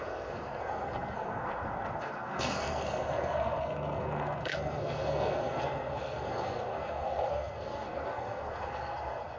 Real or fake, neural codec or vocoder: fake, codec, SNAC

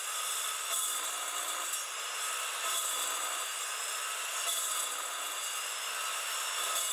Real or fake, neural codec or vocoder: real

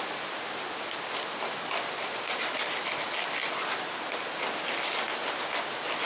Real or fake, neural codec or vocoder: real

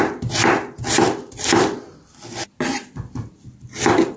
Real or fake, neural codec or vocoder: real